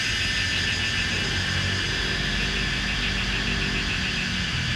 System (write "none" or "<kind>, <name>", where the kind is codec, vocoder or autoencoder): none